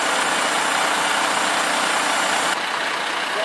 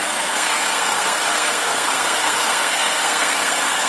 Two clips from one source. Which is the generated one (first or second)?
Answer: second